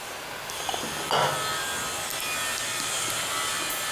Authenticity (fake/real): real